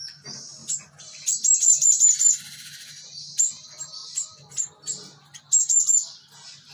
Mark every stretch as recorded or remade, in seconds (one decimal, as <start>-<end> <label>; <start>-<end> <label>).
0.0-4.0 recorded; 4.0-5.5 remade; 5.5-6.7 recorded